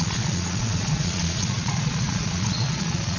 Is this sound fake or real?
fake